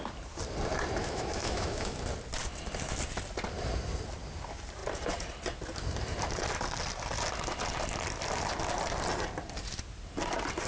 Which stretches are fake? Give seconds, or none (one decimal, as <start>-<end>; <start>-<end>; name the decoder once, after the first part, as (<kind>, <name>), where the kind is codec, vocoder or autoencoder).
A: 1.0-2.0 (autoencoder, DAC-VAE)